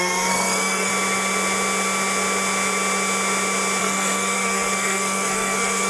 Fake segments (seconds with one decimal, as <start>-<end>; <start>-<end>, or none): 0.0-0.9; 3.8-5.9